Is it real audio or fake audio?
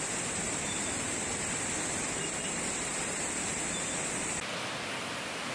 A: fake